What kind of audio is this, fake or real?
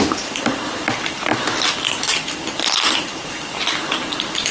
real